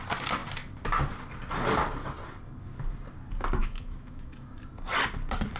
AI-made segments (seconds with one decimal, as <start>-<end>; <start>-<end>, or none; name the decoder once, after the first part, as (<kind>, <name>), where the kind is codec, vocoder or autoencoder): 3.6-4.6 (autoencoder, DAC-VAE)